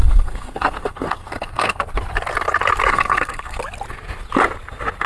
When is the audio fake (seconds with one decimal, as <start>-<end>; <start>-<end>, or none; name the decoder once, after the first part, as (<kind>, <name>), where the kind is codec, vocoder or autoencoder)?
0.0-1.8 (codec, SNAC); 2.9-3.6